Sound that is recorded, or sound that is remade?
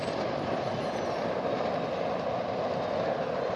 recorded